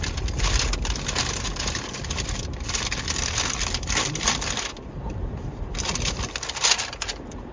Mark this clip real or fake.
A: real